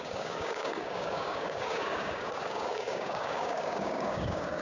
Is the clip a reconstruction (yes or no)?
yes